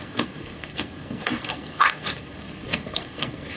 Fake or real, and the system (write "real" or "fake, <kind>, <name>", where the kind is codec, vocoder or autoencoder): fake, codec, SNAC